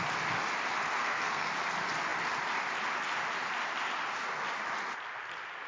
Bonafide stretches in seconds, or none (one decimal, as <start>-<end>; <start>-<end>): 0.0-1.0; 1.5-5.7